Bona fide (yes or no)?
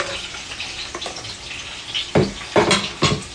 yes